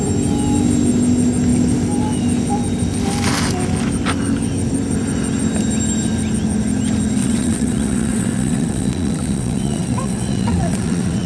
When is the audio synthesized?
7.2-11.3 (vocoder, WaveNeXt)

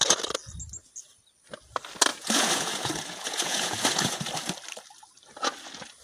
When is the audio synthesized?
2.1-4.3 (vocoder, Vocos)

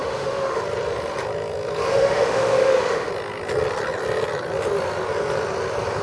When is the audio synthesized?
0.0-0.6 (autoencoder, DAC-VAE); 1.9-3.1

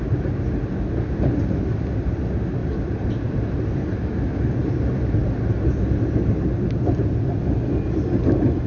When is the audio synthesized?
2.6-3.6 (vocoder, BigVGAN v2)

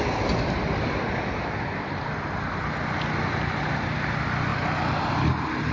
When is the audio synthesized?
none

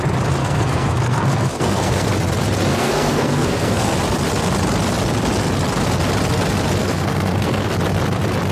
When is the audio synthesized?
0.4-2.1 (codec, SNAC); 2.7-3.9; 6.8-7.7

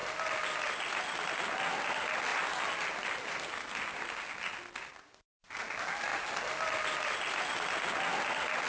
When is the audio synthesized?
none

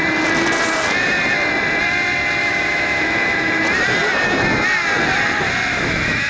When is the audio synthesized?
2.4-3.6 (autoencoder, DAC-VAE); 5.7-6.3